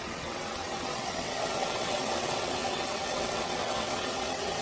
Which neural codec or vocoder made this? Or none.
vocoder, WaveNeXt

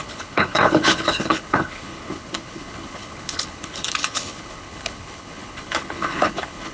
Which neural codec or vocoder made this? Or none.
codec, HILCodec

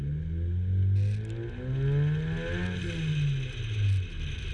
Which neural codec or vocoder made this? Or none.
none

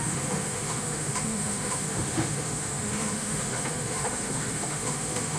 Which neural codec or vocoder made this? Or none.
autoencoder, DAC-VAE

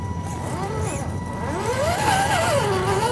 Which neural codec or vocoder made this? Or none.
none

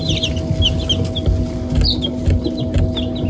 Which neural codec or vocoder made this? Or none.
none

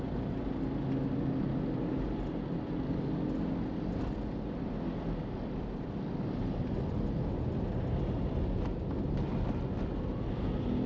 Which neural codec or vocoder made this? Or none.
none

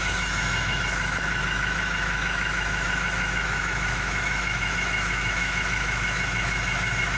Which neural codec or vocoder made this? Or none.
autoencoder, DAC-VAE